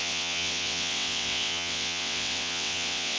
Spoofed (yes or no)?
yes